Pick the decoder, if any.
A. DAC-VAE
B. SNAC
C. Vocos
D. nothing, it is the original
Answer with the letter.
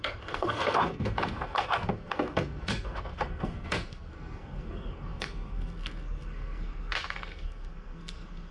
B